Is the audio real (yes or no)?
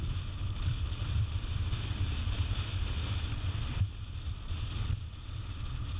yes